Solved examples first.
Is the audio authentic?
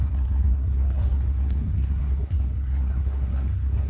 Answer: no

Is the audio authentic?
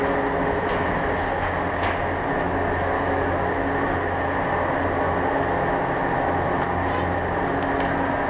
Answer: yes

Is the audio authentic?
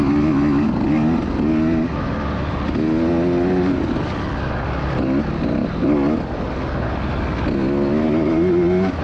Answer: yes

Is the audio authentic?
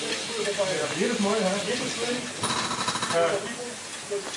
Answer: yes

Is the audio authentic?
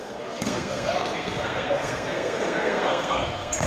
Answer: no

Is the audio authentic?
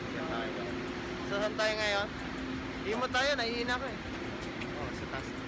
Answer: yes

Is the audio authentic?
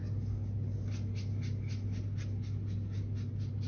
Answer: yes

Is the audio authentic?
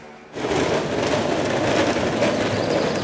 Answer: yes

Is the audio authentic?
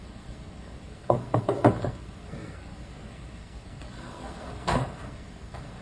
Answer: no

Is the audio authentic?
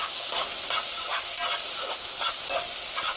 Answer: yes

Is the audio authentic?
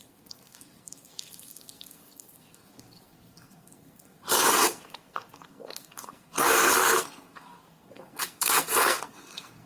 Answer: no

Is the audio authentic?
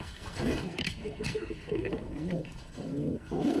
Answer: no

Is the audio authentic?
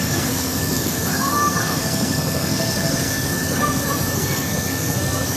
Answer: no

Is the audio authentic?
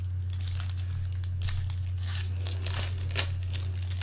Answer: yes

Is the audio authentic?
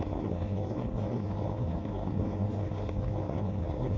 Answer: no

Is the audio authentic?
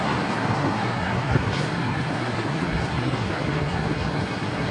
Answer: no